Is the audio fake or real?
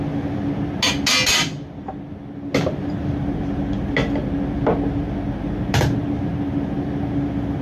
real